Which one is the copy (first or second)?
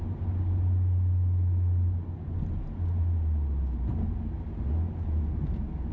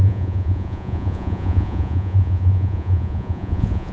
second